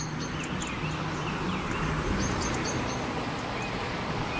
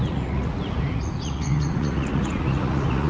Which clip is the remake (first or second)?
second